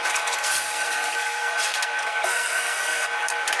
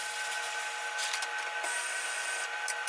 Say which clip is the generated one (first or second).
first